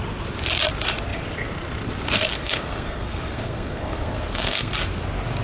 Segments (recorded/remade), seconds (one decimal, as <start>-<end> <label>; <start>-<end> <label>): 0.0-2.3 recorded; 2.3-4.7 remade; 4.7-5.4 recorded